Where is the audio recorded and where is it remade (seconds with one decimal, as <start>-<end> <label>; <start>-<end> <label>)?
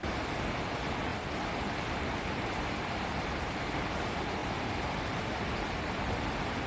0.0-1.1 recorded; 1.1-3.8 remade; 3.8-4.4 recorded; 4.4-5.7 remade; 5.7-6.7 recorded